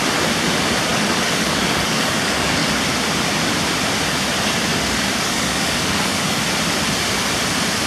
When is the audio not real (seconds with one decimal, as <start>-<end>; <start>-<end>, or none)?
0.9-2.8; 4.7-6.4